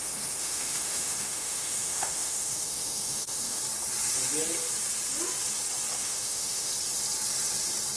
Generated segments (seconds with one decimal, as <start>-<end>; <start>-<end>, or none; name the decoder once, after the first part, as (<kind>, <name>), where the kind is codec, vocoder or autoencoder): 0.0-3.6 (autoencoder, DAC-VAE); 6.0-6.7